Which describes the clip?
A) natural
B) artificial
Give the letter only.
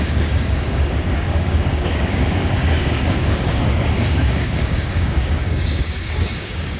B